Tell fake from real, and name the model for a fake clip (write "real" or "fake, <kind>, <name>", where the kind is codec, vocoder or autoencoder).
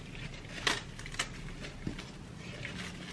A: real